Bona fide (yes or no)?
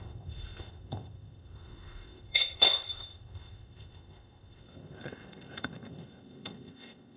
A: no